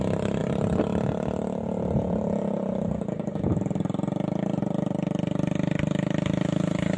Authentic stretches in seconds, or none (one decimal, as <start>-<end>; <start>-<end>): 0.0-7.0